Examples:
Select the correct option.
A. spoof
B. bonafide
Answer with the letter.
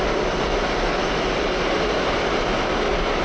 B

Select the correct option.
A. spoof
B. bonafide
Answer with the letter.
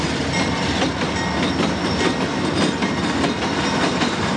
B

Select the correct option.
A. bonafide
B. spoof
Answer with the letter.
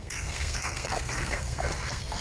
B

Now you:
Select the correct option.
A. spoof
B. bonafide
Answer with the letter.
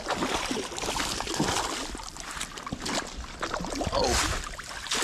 B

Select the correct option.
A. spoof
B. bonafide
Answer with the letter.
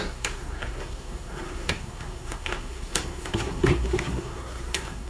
A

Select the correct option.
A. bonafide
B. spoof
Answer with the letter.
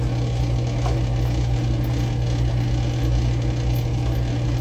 A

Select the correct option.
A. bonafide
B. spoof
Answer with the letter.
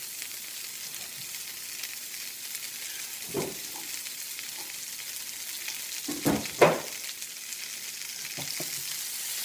A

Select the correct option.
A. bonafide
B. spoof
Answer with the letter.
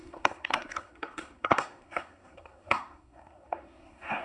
B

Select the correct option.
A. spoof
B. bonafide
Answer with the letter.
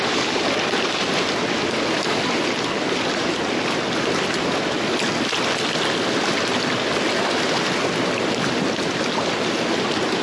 B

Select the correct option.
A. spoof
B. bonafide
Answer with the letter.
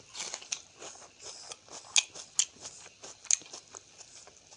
B